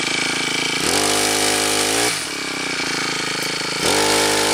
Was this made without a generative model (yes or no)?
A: yes